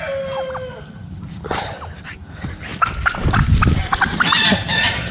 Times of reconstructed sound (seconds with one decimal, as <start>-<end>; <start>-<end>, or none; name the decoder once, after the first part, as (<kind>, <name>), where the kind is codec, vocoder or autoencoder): 2.7-3.5 (vocoder, BigVGAN v2); 4.4-5.1